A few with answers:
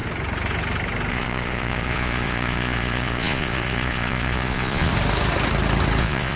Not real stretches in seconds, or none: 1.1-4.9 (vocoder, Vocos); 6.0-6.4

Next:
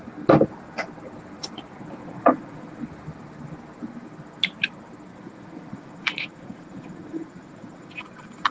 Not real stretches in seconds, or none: 2.0-2.8 (vocoder, Vocos); 5.1-8.0

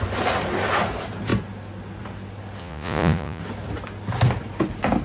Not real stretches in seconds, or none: 2.6-3.4 (vocoder, Vocos)

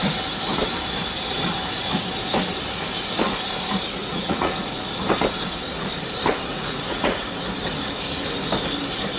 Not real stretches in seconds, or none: 4.0-4.8 (vocoder, Vocos); 6.5-7.2

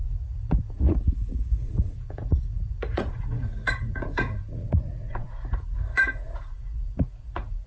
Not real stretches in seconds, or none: 0.0-7.7 (vocoder, Vocos)

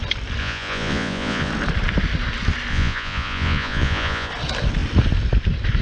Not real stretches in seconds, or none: 0.4-1.5 (vocoder, Vocos); 2.7-4.3